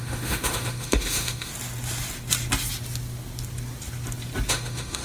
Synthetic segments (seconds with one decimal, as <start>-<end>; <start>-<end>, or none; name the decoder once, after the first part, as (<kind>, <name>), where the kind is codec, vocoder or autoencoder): 0.0-1.5 (autoencoder, DAC-VAE); 4.5-5.0